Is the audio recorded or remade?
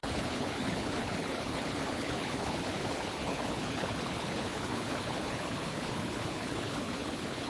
remade